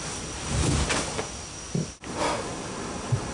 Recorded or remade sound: recorded